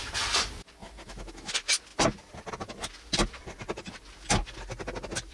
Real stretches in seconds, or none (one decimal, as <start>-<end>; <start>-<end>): 0.0-0.8; 1.5-5.3